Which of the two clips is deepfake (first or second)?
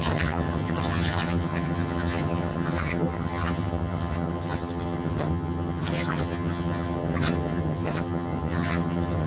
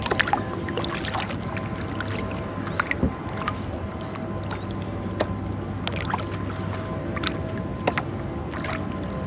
first